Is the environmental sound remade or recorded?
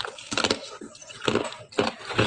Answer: recorded